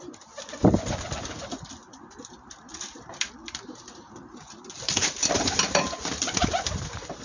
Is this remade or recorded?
remade